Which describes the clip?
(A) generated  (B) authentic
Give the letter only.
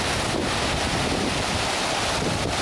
B